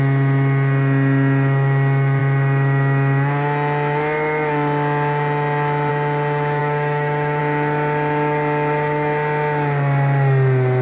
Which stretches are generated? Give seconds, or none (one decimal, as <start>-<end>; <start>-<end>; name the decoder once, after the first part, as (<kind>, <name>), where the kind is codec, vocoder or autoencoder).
6.6-7.4 (autoencoder, DAC-VAE)